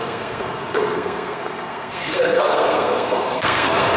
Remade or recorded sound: remade